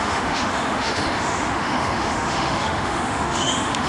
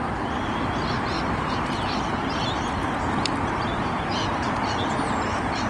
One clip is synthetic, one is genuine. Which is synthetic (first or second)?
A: first